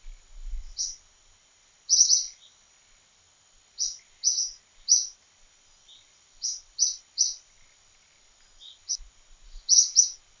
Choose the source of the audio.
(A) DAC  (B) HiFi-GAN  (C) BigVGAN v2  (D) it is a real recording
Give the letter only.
D